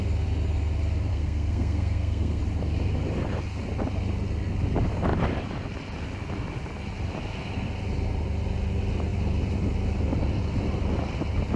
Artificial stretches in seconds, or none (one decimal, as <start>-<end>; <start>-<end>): 1.1-2.4